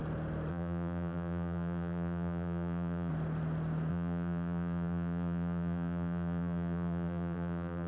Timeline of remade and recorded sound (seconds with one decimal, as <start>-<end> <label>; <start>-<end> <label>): 0.0-0.5 recorded; 0.5-3.1 remade; 3.1-3.9 recorded; 3.9-7.9 remade